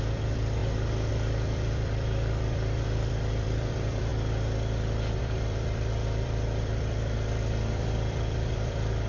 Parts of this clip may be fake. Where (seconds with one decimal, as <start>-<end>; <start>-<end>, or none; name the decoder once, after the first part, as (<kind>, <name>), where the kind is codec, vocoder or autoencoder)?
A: 0.0-0.6 (vocoder, BigVGAN v2); 1.1-4.1; 5.2-9.1